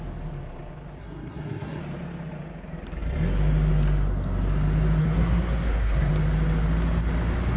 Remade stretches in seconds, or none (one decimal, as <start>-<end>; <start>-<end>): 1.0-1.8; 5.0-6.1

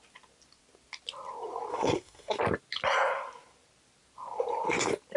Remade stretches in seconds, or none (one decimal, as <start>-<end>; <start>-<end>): 1.7-2.4

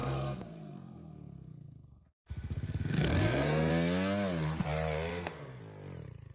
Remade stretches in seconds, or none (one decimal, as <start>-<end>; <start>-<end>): 0.0-3.7; 5.1-5.6